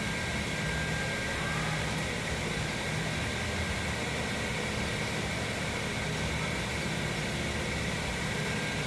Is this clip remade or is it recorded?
recorded